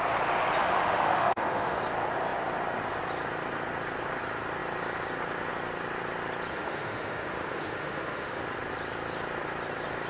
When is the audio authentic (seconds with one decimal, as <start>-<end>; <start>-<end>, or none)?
0.0-0.6; 1.8-6.5; 8.4-10.1